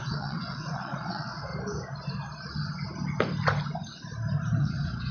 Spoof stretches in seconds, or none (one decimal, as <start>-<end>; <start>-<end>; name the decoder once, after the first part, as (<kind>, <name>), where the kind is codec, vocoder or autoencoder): 0.0-1.5 (vocoder, WaveNeXt); 4.6-5.1